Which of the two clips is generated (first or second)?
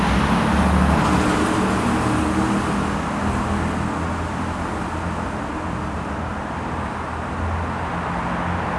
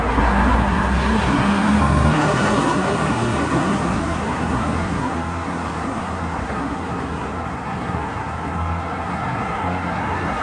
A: second